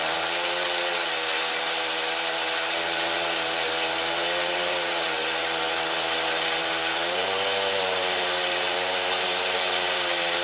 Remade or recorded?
remade